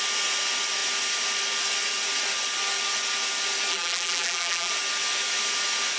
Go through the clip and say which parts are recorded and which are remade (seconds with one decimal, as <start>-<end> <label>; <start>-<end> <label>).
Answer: 0.0-3.7 recorded; 3.7-4.7 remade; 4.7-6.0 recorded